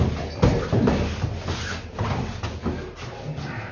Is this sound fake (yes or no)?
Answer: no